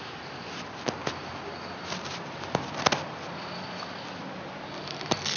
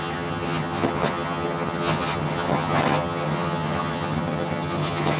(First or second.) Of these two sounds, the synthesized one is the second